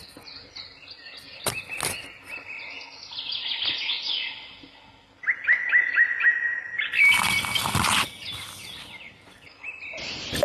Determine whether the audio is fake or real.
real